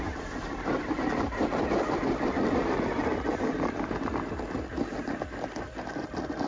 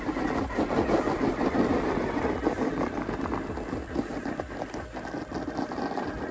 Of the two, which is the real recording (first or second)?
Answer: second